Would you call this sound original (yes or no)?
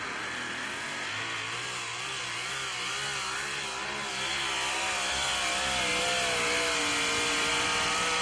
yes